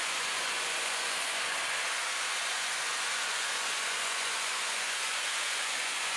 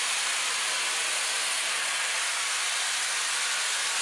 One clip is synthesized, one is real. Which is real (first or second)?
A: second